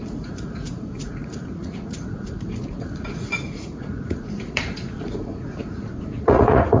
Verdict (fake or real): fake